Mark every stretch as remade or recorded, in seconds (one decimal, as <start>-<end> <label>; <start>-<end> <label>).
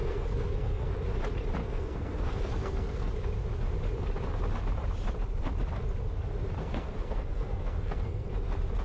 0.0-0.9 remade; 0.9-1.6 recorded; 1.6-3.1 remade; 3.1-6.6 recorded; 6.6-8.3 remade; 8.3-8.8 recorded